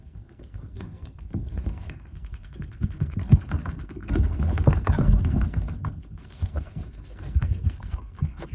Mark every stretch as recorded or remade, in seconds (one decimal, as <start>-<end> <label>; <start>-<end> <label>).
0.0-8.5 remade